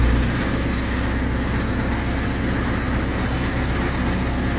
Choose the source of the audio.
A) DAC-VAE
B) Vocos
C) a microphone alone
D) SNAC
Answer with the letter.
C